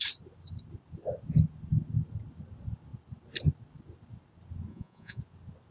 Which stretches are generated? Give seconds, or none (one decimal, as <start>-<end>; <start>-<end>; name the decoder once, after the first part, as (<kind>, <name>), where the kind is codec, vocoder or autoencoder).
4.7-5.2 (vocoder, Vocos)